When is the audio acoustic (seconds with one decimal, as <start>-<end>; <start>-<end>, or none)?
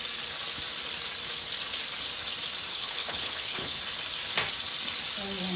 0.0-2.7; 3.8-5.6